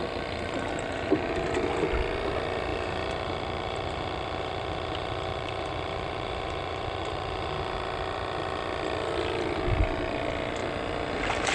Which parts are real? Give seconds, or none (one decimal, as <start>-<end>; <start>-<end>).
0.0-2.7; 7.8-11.5